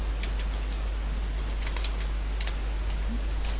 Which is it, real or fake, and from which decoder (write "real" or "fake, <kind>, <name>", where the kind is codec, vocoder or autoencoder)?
real